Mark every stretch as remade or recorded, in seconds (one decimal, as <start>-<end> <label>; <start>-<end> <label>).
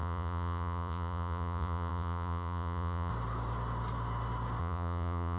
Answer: 0.0-3.1 remade; 3.1-4.6 recorded; 4.6-5.4 remade